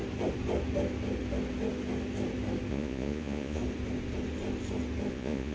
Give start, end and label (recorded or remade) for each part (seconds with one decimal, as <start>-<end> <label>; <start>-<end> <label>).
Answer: 0.0-2.7 recorded; 2.7-3.6 remade; 3.6-5.1 recorded; 5.1-5.5 remade